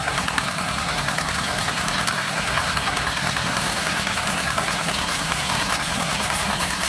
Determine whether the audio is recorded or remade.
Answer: remade